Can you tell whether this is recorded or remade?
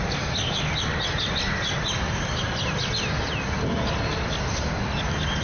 recorded